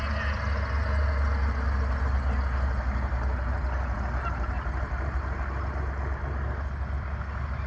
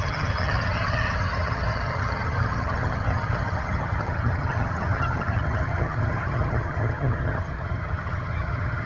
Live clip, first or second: first